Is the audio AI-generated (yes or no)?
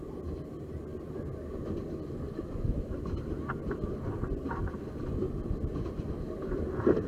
no